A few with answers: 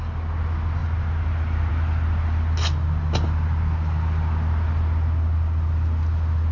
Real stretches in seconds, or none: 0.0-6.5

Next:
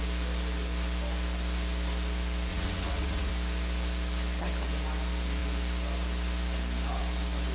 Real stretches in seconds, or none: 0.0-2.5; 3.3-7.5

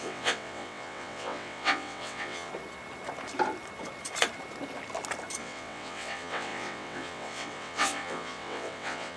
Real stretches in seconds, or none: 2.5-5.4

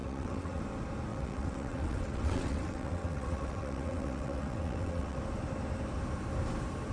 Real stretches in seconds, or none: 0.6-1.1; 5.2-6.9

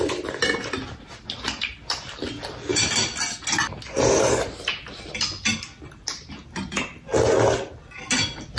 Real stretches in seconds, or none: 0.0-8.6

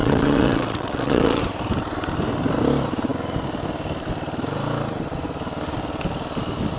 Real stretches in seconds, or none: 1.4-6.8